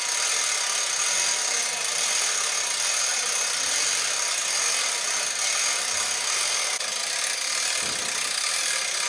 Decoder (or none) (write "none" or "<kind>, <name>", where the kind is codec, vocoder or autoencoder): none